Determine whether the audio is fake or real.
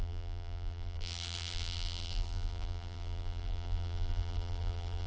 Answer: fake